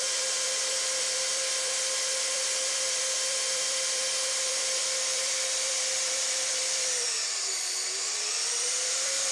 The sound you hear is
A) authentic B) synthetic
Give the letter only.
B